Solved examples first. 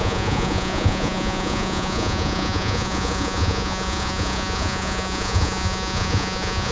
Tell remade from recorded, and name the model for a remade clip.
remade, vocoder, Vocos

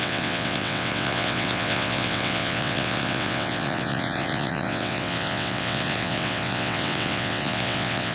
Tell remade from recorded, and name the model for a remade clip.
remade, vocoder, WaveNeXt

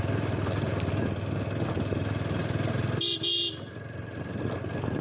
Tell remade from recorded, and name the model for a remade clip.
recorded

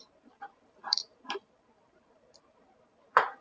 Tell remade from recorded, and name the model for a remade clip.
remade, vocoder, BigVGAN v2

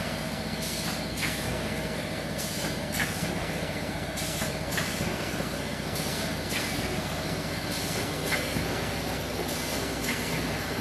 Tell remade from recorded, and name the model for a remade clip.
remade, codec, SNAC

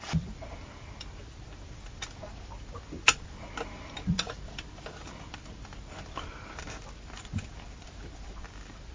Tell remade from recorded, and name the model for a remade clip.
remade, vocoder, BigVGAN v2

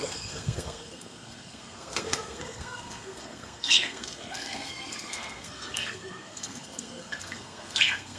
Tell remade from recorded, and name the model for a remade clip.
remade, codec, SNAC